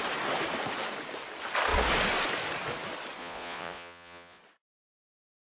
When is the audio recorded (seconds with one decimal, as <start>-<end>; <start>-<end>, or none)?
0.0-3.2; 4.4-5.5